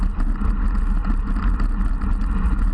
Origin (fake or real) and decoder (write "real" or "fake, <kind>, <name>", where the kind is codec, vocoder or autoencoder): real